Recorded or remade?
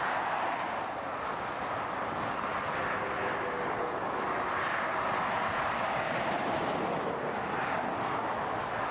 recorded